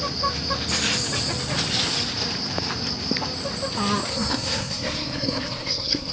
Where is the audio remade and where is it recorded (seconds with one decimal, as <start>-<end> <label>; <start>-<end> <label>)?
0.0-4.1 recorded; 4.1-6.1 remade